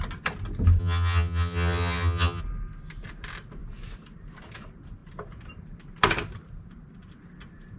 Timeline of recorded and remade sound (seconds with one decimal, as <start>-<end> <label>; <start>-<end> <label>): 0.0-0.8 recorded; 0.8-2.4 remade; 2.4-7.8 recorded